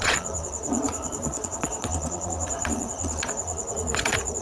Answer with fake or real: fake